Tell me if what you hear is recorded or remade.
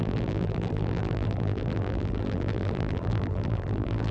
remade